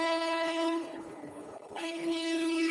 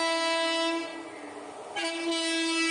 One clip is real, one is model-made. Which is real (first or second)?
second